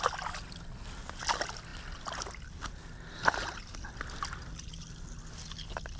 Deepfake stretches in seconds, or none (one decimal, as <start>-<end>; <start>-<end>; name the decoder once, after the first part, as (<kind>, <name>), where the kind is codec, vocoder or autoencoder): none